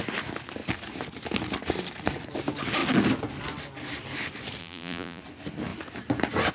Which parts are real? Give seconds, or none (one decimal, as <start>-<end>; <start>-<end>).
0.0-4.6; 5.2-6.5

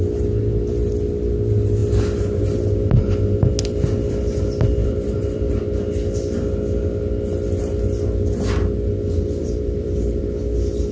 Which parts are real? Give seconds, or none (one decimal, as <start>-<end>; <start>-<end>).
0.0-4.8; 5.6-9.4; 10.2-10.9

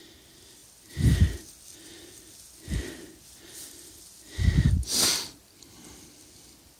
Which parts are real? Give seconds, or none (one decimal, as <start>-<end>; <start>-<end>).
none

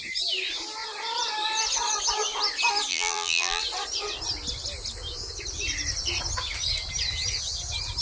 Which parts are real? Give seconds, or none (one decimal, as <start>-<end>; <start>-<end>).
0.0-2.9; 3.6-8.0

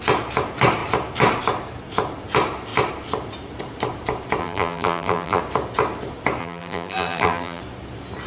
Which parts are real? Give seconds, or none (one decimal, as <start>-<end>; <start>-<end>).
0.0-4.4; 5.4-6.4; 7.6-8.3

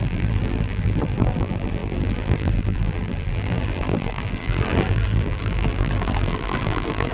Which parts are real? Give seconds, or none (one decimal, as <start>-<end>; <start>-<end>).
none

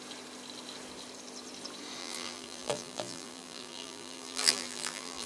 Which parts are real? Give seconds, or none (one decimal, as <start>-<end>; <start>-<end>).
0.0-2.0